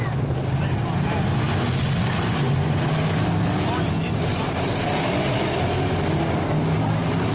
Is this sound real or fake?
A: real